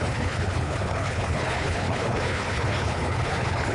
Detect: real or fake fake